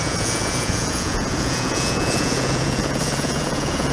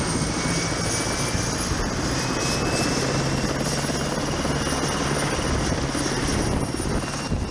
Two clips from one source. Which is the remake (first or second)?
first